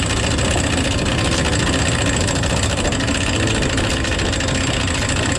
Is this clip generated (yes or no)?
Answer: no